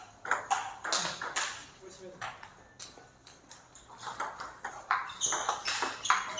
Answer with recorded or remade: recorded